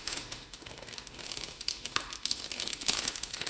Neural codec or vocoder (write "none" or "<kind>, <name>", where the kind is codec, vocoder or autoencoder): autoencoder, DAC-VAE